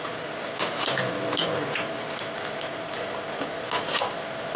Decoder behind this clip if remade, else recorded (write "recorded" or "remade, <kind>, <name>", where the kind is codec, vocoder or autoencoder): recorded